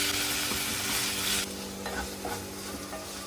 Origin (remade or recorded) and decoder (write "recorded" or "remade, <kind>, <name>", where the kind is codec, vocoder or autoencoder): recorded